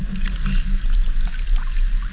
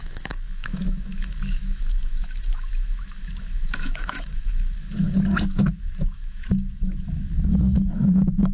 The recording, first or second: first